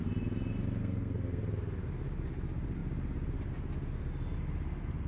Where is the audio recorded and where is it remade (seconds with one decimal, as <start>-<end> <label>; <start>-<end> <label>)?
0.0-0.8 recorded; 0.8-1.4 remade; 1.4-5.1 recorded